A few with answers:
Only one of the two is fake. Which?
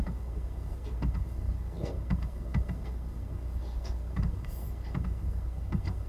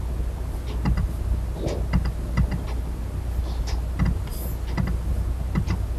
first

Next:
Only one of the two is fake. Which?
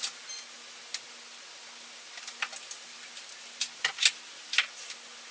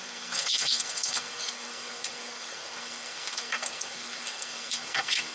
second